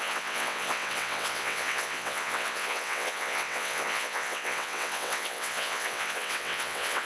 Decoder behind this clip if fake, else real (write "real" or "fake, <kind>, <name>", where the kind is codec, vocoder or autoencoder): fake, vocoder, WaveNeXt